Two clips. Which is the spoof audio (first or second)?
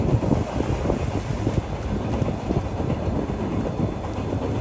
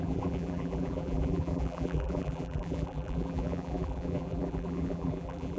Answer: second